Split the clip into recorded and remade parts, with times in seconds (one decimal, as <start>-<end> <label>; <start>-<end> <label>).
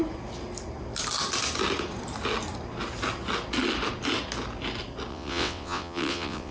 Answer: 0.0-5.1 recorded; 5.1-6.5 remade